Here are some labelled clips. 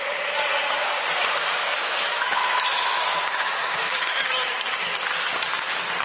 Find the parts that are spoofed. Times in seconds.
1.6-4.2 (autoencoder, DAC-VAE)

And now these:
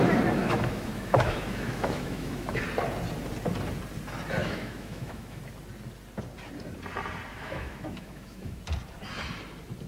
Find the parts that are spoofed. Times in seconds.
0.4-2.6 (autoencoder, DAC-VAE); 4.4-5.4; 7.3-8.6

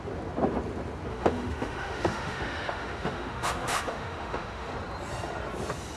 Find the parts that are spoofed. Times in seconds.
1.1-4.7 (autoencoder, DAC-VAE)

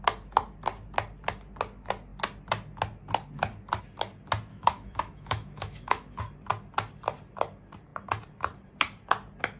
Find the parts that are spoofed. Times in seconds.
4.5-6.2 (autoencoder, DAC-VAE)